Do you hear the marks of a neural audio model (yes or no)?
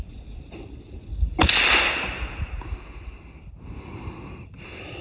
no